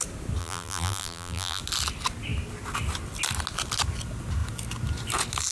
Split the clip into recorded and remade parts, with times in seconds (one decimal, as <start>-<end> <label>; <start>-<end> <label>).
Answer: 0.0-0.4 recorded; 0.4-1.6 remade; 1.6-5.5 recorded